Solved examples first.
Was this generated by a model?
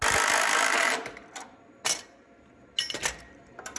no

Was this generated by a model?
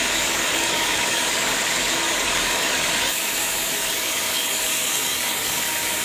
yes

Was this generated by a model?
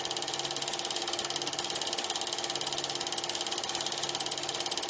no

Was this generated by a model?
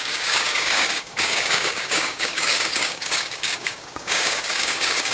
yes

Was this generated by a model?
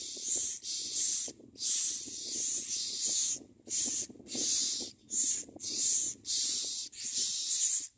no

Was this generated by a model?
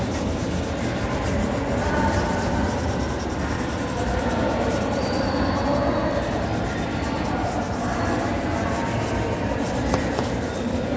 no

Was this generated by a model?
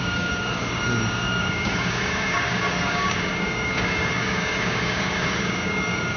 yes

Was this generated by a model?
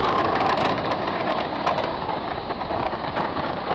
yes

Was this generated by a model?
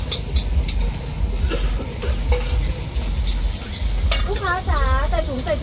no